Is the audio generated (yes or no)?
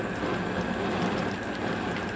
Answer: no